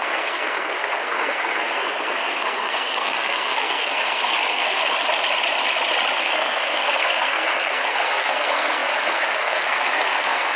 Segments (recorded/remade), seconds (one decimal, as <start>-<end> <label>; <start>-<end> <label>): 0.0-4.8 remade; 4.8-6.2 recorded; 6.2-10.6 remade